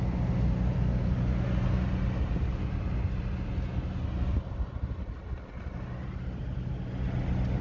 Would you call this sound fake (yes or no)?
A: no